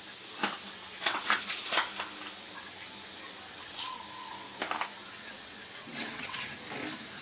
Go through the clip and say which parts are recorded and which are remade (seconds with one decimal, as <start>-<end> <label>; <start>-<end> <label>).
0.0-0.8 recorded; 0.8-1.4 remade; 1.4-3.5 recorded; 3.5-4.0 remade; 4.0-5.0 recorded; 5.0-6.5 remade; 6.5-7.2 recorded